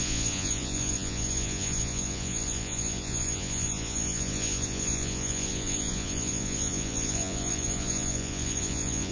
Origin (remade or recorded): remade